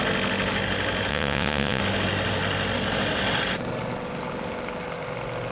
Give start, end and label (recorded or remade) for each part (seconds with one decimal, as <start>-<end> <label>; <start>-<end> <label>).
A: 0.0-1.1 recorded; 1.1-1.8 remade; 1.8-5.5 recorded